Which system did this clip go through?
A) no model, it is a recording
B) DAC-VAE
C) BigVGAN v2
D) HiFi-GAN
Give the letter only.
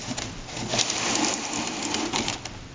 C